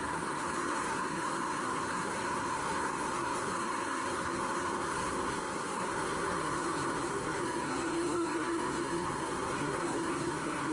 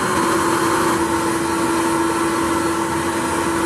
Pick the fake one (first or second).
first